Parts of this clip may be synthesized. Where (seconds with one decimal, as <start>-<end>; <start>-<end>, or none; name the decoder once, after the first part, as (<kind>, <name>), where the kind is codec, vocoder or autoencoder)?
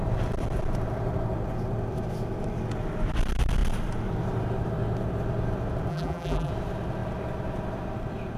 5.9-6.5 (vocoder, BigVGAN v2)